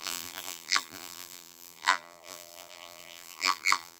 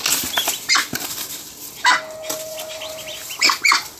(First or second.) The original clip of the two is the second